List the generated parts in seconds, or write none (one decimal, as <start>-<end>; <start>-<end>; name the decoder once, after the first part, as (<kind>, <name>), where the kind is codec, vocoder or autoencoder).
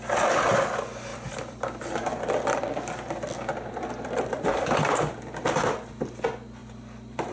1.1-5.5 (vocoder, BigVGAN v2); 6.6-7.3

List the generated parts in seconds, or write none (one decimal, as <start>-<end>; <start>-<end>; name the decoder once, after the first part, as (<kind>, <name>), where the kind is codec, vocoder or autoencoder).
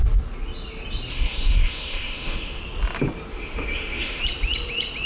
1.1-2.6 (autoencoder, DAC-VAE); 3.3-4.2